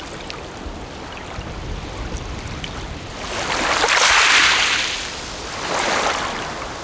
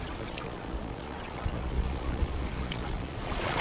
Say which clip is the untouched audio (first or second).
first